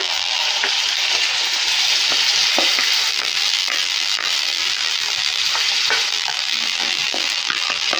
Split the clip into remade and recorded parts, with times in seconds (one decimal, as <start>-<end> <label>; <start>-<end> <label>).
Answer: 0.0-0.4 remade; 0.4-3.1 recorded; 3.1-5.4 remade; 5.4-6.1 recorded; 6.1-8.0 remade